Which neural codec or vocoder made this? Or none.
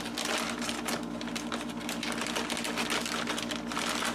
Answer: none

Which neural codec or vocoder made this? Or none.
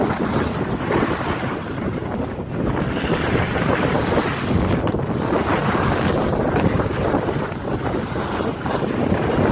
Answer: none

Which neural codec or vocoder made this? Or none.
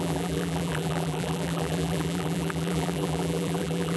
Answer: vocoder, BigVGAN v2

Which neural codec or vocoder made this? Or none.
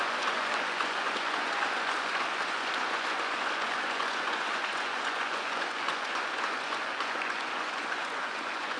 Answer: vocoder, Vocos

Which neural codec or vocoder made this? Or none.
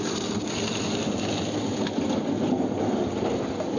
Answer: none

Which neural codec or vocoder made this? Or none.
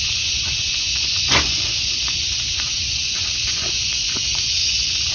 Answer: vocoder, Vocos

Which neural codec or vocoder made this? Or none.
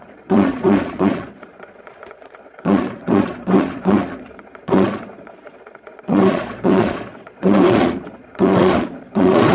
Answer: vocoder, Vocos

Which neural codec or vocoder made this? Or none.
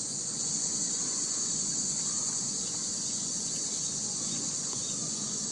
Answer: vocoder, Vocos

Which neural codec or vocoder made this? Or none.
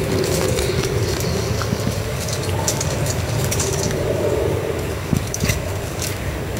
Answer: codec, DAC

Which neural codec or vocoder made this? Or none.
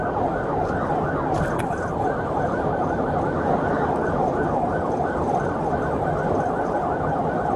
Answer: none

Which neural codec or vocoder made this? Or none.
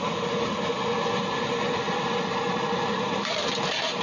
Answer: none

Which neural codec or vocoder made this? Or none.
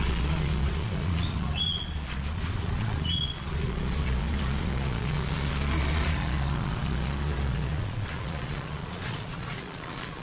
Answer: vocoder, Vocos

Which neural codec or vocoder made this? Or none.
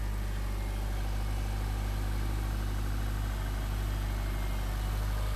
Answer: none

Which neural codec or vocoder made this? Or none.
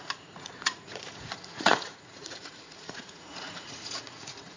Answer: vocoder, Vocos